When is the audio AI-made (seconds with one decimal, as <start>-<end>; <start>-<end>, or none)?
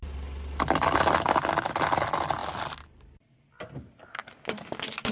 none